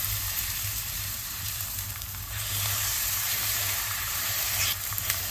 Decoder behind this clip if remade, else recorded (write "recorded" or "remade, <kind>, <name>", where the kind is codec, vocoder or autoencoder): remade, vocoder, BigVGAN v2